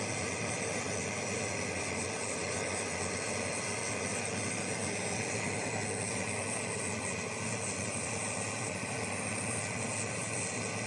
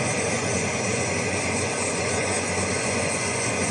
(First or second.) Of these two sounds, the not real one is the second